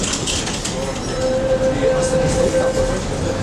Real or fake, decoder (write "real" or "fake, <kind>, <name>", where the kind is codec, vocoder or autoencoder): real